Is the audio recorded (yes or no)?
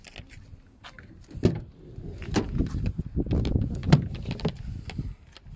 yes